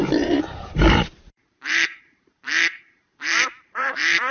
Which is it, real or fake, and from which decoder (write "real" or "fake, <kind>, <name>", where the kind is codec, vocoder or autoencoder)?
fake, vocoder, BigVGAN v2